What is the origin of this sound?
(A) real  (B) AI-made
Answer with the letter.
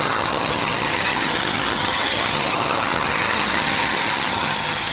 B